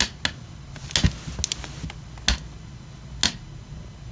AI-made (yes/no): no